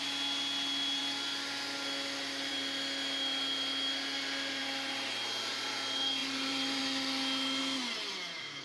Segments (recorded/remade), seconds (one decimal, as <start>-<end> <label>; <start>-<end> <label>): 0.0-6.2 recorded; 6.2-6.8 remade; 6.8-8.6 recorded

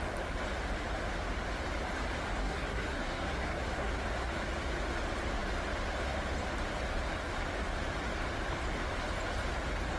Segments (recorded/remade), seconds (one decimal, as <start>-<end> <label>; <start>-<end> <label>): 0.0-2.4 recorded; 2.4-3.9 remade; 3.9-10.0 recorded

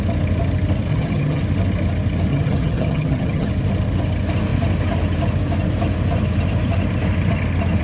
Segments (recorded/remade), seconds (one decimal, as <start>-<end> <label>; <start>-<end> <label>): 0.0-0.9 recorded; 0.9-1.4 remade; 1.4-2.3 recorded; 2.3-3.5 remade; 3.5-7.8 recorded